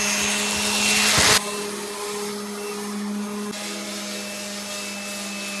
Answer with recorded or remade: recorded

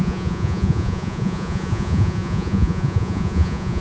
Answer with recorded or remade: remade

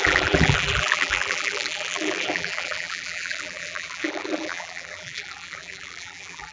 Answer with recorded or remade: remade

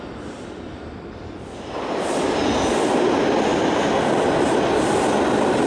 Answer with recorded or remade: recorded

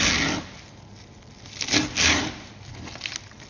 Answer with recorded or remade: recorded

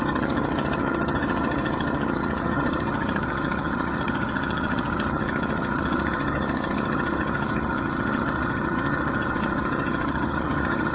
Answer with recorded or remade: remade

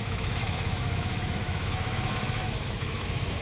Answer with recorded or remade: remade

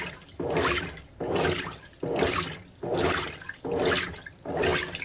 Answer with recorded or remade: recorded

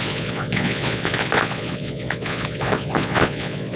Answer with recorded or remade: remade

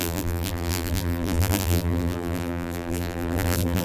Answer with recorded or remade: remade